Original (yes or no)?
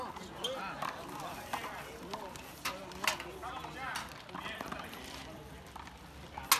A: yes